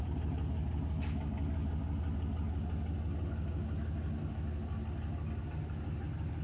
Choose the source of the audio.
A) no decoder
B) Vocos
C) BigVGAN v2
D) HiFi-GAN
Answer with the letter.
A